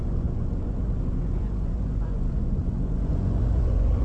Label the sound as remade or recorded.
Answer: remade